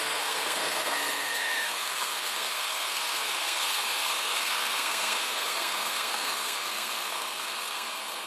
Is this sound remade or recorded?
remade